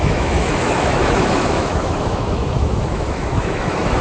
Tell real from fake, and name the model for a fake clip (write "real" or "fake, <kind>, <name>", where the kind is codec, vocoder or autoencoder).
fake, autoencoder, DAC-VAE